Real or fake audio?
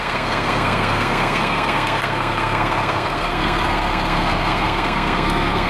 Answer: fake